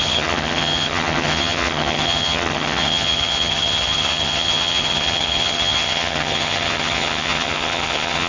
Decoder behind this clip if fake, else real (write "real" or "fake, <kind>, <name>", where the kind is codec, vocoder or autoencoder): fake, vocoder, HiFi-GAN